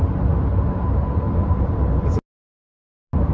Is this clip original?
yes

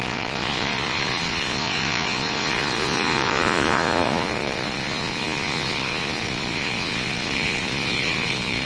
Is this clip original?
no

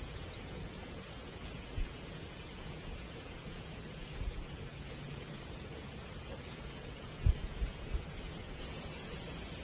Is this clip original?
no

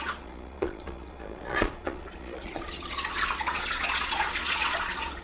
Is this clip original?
no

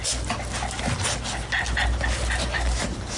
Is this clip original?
yes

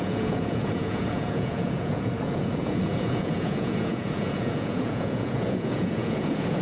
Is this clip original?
no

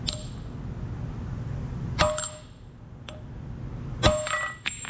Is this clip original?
yes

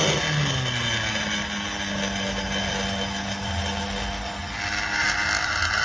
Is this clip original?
yes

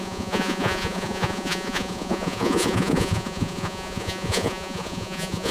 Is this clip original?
no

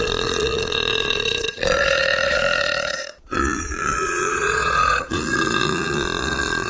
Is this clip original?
no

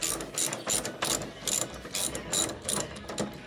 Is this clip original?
yes